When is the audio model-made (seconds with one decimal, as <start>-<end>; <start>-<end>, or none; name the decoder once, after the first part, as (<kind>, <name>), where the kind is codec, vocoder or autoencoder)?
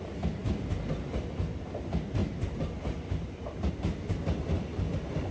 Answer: none